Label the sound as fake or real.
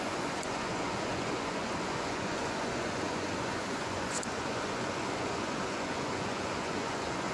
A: fake